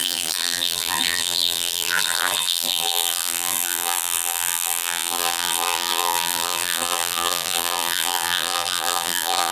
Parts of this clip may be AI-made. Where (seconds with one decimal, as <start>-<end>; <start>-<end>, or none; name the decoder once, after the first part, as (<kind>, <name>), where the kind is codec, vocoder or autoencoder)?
0.0-9.5 (vocoder, BigVGAN v2)